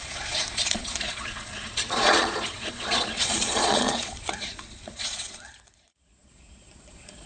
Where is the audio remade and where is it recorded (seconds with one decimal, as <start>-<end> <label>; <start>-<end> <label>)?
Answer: 0.0-7.3 remade